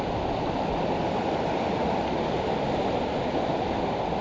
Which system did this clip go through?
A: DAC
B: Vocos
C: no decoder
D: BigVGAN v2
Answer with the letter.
C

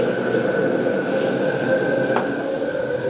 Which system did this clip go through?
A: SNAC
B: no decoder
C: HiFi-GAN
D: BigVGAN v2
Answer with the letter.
B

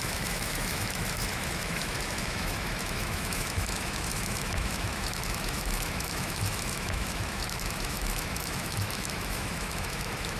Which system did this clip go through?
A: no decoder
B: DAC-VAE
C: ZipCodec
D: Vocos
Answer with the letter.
B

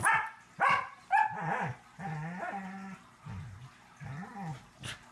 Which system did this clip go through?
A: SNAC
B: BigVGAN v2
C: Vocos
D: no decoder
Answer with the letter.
D